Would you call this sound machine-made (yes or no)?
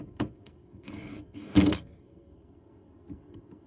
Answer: yes